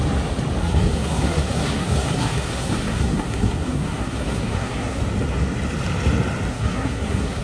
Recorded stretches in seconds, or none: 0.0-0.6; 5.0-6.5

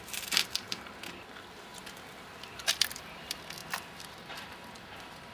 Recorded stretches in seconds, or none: 1.7-2.2

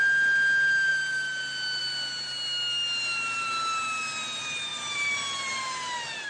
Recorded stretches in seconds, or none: 0.0-4.7; 5.6-6.3

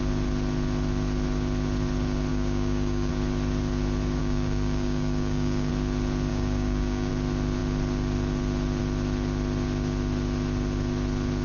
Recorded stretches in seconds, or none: 0.0-2.3; 3.1-4.2; 5.7-6.3; 7.1-11.4

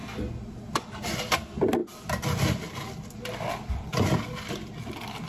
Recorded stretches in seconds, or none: 0.0-5.3

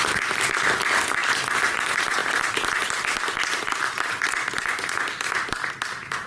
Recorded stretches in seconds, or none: 0.0-6.3

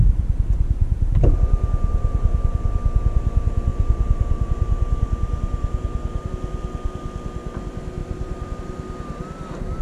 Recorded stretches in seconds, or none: 0.0-0.8; 2.3-3.7; 6.3-8.0; 8.6-9.8

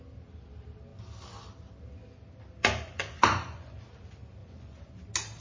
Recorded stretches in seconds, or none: 0.0-2.6; 3.8-4.4; 4.9-5.4